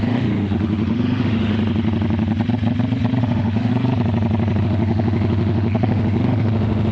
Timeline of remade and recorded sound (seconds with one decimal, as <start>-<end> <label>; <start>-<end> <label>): 0.0-1.5 remade; 1.5-3.2 recorded; 3.2-3.7 remade; 3.7-4.6 recorded; 4.6-6.9 remade